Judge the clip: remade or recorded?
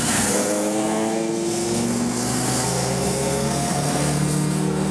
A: remade